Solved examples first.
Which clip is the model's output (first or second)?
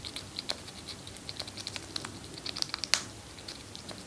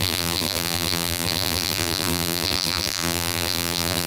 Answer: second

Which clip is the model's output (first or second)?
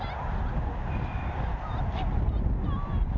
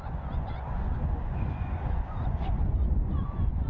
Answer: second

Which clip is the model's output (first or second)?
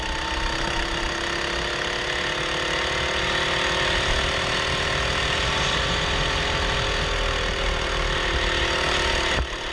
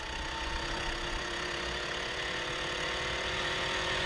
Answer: second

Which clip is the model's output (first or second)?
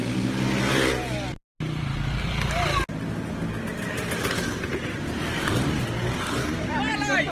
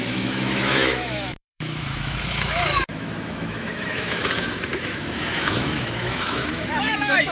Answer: second